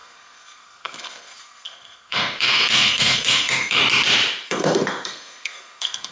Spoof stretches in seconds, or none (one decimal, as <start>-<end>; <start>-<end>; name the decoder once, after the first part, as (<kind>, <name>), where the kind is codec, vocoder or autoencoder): 0.0-3.8 (codec, SNAC); 4.5-6.1